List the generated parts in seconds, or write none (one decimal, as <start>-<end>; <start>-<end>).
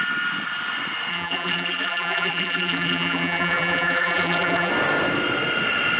1.1-4.7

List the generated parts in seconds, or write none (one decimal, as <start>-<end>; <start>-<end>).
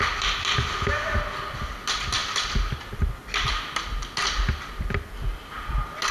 none